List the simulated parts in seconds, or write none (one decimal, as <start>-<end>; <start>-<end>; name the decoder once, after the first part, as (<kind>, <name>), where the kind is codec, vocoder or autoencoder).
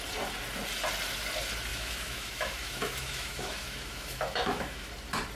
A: 1.7-4.9 (autoencoder, DAC-VAE)